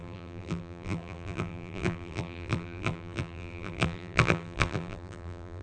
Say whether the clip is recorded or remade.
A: remade